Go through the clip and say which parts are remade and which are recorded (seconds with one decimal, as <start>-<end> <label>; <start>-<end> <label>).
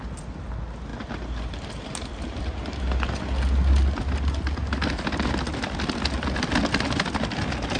0.0-7.8 recorded